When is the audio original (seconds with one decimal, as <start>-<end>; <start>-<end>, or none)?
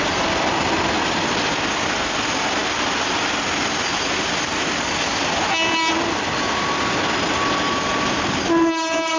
0.0-9.2